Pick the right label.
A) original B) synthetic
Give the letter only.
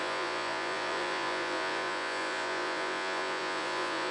B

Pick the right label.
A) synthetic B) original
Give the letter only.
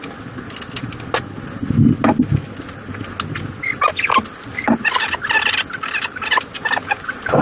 B